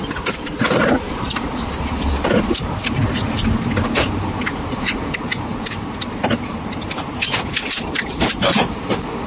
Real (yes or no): yes